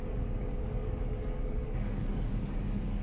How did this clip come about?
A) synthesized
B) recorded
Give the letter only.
A